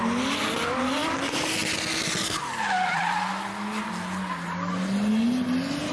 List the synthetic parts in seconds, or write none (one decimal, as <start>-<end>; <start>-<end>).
none